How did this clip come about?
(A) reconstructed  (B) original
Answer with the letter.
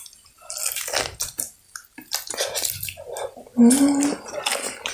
B